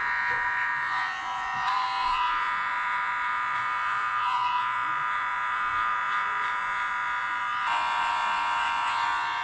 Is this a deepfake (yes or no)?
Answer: yes